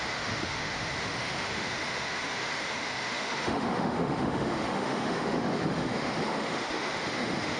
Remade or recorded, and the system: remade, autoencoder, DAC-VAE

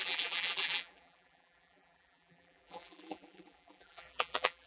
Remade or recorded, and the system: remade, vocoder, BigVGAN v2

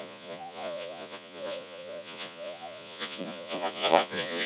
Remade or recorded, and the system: remade, vocoder, Vocos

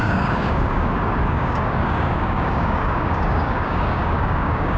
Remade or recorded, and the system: remade, codec, DAC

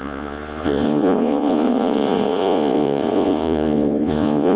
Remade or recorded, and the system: remade, vocoder, Vocos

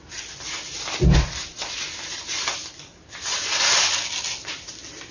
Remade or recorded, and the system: recorded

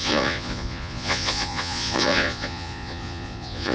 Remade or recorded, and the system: remade, vocoder, Vocos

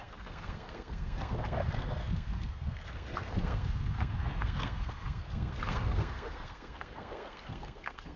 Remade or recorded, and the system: remade, codec, SNAC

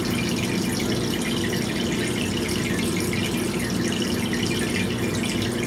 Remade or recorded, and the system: recorded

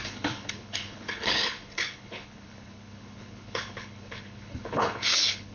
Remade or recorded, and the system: remade, codec, HILCodec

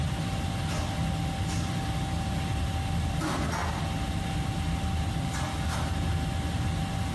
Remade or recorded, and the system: recorded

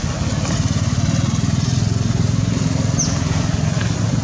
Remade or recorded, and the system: recorded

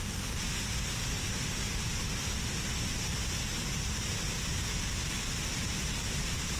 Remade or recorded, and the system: recorded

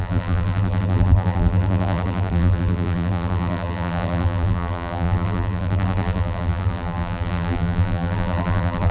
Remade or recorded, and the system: remade, vocoder, BigVGAN v2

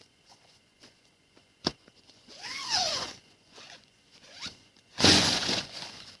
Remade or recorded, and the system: remade, vocoder, Vocos